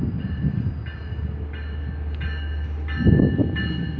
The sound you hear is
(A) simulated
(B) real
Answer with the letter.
B